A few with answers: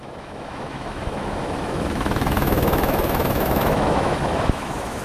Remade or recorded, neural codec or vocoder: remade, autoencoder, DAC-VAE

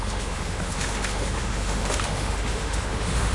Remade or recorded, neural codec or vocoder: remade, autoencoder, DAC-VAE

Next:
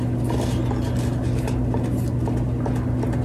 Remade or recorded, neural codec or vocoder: recorded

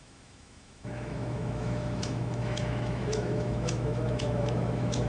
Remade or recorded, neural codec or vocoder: remade, autoencoder, DAC-VAE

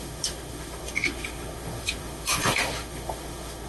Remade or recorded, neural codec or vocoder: remade, autoencoder, DAC-VAE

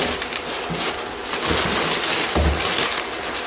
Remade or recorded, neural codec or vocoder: recorded